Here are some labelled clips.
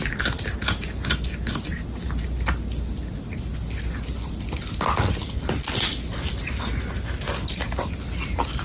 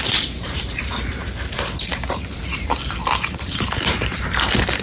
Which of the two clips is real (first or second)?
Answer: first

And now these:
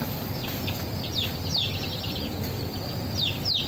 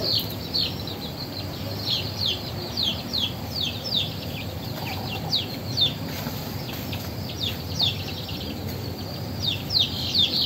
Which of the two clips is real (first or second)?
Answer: first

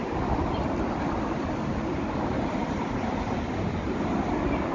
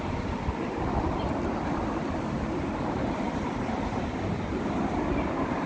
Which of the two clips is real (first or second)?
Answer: first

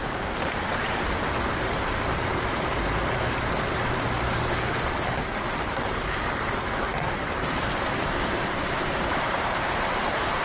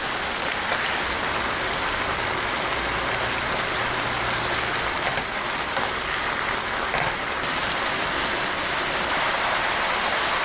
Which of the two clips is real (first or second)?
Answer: second